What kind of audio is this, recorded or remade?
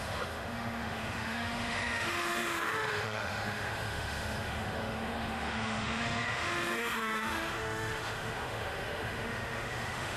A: remade